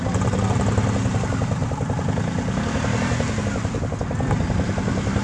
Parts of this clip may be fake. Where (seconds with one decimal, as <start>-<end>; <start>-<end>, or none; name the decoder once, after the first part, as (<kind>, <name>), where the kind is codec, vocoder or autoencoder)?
none